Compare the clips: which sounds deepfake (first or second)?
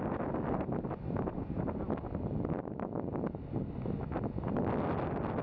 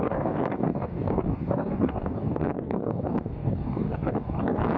second